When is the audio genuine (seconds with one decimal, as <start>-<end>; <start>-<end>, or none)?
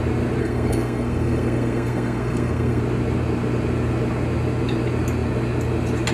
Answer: 0.0-0.4; 2.8-6.1